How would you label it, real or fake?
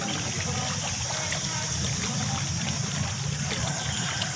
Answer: real